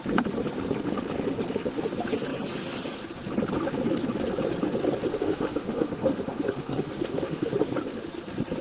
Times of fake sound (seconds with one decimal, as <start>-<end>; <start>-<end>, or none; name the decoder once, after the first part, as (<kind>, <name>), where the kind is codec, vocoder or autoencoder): 5.1-7.5 (autoencoder, DAC-VAE)